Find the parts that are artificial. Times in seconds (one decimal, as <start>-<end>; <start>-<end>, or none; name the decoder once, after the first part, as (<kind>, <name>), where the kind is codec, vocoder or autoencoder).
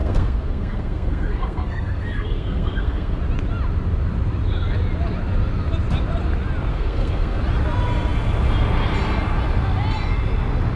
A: 0.0-3.2 (codec, SNAC); 6.7-7.4